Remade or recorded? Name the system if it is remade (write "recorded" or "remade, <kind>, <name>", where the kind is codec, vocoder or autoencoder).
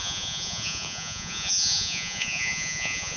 remade, vocoder, Vocos